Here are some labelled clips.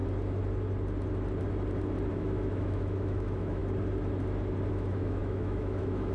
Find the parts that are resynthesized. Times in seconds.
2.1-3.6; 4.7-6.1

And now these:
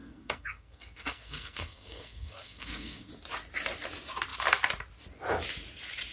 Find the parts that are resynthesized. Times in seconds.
0.0-3.1